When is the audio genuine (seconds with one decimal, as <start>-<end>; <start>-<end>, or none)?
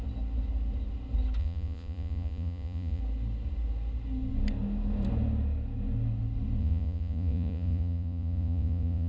0.0-1.4; 3.0-6.6